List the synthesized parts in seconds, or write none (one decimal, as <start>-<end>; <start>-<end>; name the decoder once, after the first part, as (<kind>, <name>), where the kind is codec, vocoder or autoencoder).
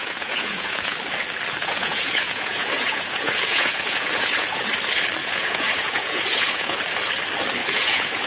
0.0-1.0 (vocoder, Vocos); 1.6-4.7; 5.2-6.8; 7.6-8.3